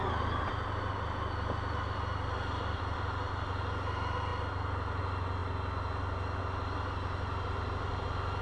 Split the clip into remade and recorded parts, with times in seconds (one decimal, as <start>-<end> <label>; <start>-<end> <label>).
0.0-8.4 recorded